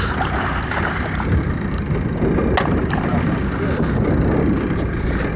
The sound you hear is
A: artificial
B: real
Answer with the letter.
B